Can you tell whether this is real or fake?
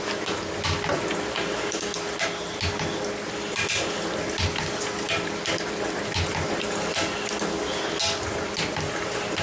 real